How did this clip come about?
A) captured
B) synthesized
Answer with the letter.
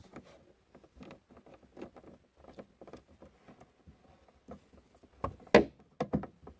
A